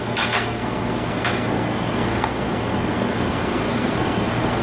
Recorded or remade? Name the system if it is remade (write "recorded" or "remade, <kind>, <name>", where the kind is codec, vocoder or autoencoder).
remade, codec, SNAC